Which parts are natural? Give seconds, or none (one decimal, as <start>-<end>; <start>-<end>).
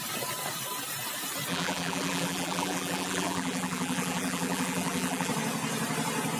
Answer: 0.0-1.5; 5.3-6.4